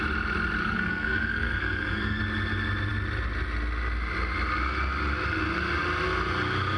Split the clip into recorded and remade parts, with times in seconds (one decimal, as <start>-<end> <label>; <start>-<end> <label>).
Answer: 0.0-0.6 recorded; 0.6-2.2 remade; 2.2-6.8 recorded